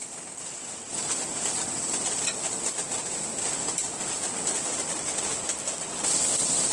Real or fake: real